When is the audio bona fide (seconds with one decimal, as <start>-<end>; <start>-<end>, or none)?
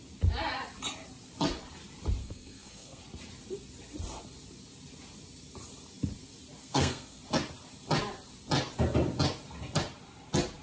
0.0-2.2; 3.0-6.6; 7.2-10.6